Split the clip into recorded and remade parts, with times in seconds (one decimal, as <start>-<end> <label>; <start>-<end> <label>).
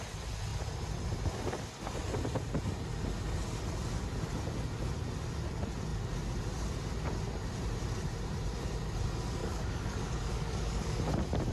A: 0.0-9.4 recorded; 9.4-11.0 remade; 11.0-11.5 recorded